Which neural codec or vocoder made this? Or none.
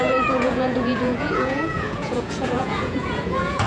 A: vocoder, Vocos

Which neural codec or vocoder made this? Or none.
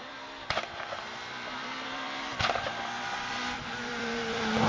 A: vocoder, BigVGAN v2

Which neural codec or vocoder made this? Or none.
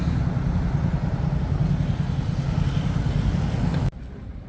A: none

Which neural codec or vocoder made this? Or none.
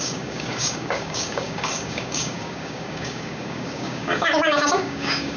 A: codec, DAC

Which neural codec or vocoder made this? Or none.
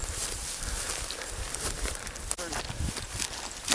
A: vocoder, BigVGAN v2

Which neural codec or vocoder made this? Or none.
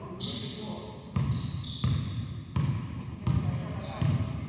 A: none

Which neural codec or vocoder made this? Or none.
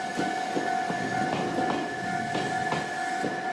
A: none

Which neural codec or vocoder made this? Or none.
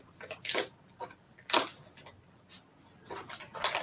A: none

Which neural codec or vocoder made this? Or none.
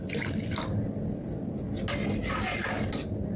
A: none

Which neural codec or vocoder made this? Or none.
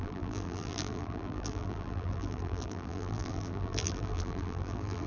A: vocoder, BigVGAN v2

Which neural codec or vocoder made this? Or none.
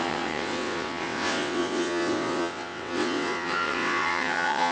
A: vocoder, WaveNeXt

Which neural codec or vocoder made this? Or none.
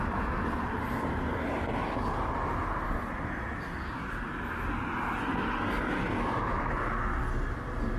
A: none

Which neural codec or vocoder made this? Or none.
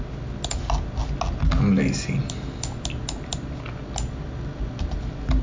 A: none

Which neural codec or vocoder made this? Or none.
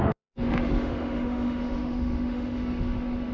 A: autoencoder, DAC-VAE